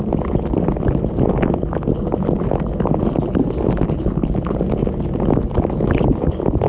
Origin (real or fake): real